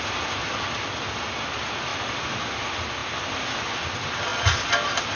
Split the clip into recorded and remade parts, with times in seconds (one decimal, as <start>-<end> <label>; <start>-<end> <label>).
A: 0.0-5.2 recorded